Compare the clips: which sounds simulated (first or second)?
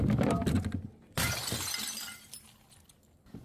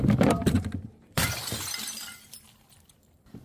second